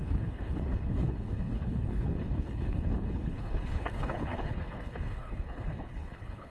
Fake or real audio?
fake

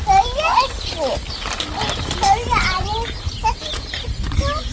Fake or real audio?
real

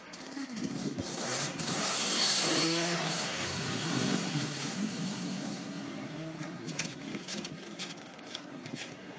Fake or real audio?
fake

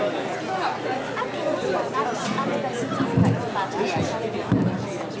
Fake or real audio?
real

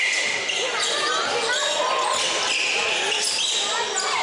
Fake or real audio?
real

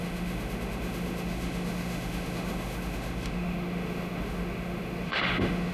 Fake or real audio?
fake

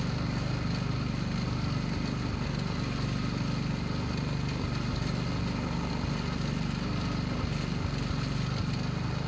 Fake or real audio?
real